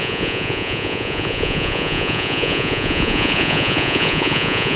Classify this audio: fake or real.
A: fake